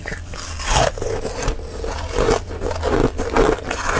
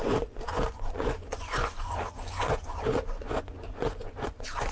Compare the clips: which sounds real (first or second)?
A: first